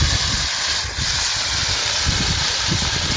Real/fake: fake